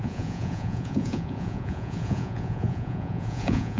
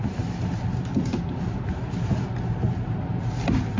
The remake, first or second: first